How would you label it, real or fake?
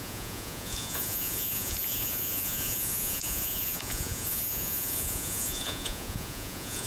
fake